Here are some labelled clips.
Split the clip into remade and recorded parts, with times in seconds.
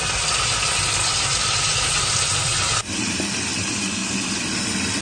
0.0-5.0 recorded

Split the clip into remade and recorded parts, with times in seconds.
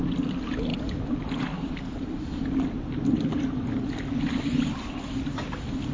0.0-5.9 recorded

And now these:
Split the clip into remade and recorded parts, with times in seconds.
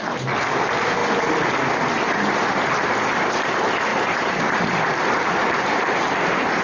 0.0-1.0 recorded; 1.0-3.3 remade; 3.3-3.9 recorded; 3.9-6.0 remade; 6.0-6.6 recorded